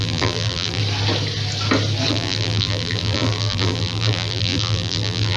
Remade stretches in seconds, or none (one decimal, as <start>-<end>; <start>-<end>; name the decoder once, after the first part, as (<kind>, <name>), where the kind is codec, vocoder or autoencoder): 0.0-0.8 (vocoder, BigVGAN v2); 2.1-5.4